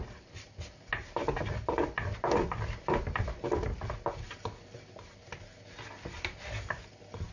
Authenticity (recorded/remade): recorded